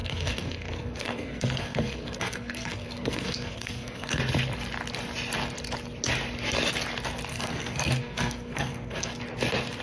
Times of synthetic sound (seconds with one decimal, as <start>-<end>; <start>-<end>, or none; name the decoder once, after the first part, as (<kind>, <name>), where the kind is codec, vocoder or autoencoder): 0.0-4.2 (codec, SNAC); 7.3-9.1